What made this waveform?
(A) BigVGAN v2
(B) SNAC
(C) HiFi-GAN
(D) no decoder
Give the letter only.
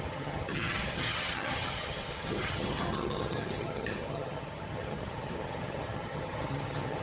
C